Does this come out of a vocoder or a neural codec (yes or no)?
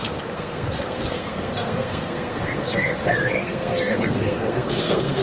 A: yes